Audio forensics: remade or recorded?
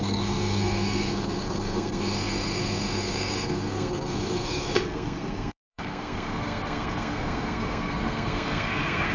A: remade